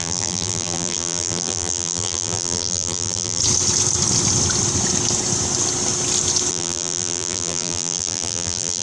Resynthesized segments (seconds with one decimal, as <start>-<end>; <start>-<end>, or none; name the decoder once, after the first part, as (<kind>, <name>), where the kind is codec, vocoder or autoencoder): 0.0-3.4 (vocoder, BigVGAN v2); 6.5-8.8

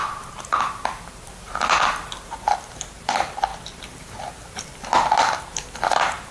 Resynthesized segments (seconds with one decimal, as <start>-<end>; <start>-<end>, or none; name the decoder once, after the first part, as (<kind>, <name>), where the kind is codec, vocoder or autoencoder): 0.0-6.3 (vocoder, BigVGAN v2)